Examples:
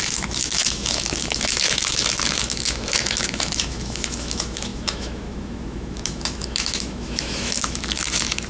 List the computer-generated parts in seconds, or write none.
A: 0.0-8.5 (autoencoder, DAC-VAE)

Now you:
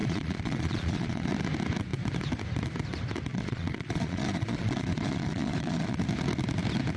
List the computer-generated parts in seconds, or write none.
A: 0.0-1.3 (vocoder, Vocos); 3.3-6.0

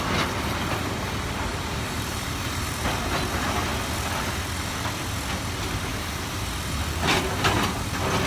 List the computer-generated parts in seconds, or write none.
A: 1.5-3.2 (vocoder, BigVGAN v2); 5.9-6.7

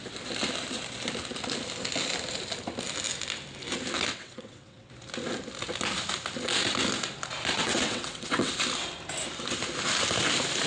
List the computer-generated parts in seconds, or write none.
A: 4.1-4.9 (vocoder, WaveNeXt); 7.5-8.5

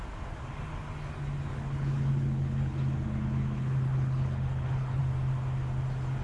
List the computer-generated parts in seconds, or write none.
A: 1.5-5.0 (codec, HILCodec)

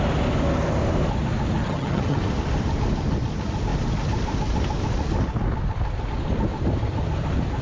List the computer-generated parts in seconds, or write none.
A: 1.6-2.2 (vocoder, HiFi-GAN)